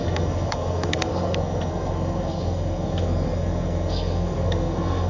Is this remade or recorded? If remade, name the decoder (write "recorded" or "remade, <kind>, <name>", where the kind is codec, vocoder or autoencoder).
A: remade, codec, SNAC